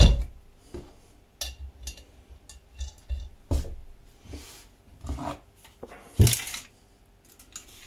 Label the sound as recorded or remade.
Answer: recorded